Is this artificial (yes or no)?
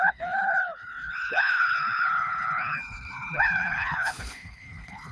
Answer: yes